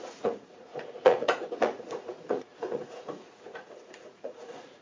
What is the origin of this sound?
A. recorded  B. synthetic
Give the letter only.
B